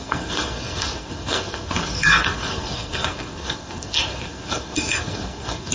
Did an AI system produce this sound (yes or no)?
yes